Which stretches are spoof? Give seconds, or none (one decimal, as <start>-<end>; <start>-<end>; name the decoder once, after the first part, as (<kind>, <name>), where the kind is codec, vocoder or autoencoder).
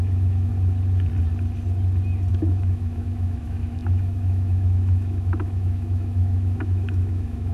0.0-0.5 (autoencoder, DAC-VAE); 2.3-7.5